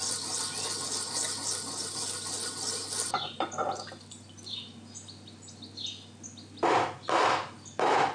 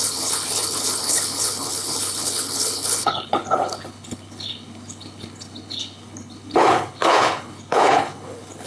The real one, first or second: first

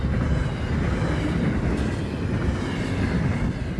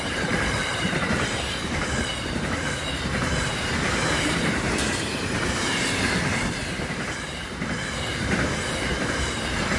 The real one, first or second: first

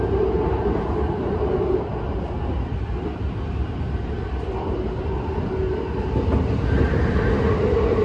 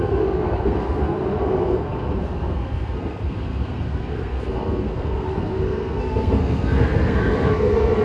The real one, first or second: first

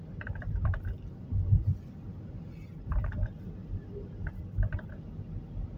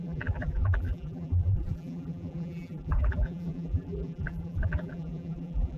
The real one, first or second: first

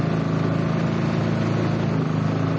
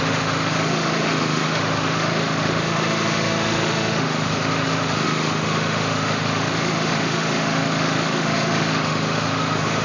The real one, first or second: first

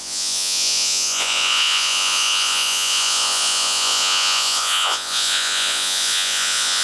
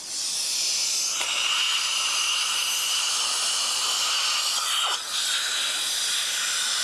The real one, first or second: second